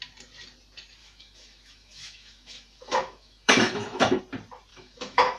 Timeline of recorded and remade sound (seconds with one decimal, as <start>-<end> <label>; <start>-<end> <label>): 0.0-1.0 recorded; 1.0-4.2 remade; 4.2-4.7 recorded; 4.7-5.4 remade